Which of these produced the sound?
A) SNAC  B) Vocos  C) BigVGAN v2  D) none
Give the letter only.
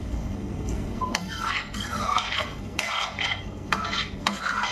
A